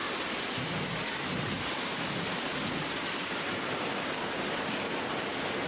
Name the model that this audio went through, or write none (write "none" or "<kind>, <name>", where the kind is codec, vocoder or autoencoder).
none